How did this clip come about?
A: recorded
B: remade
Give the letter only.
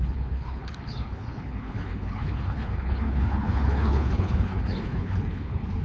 B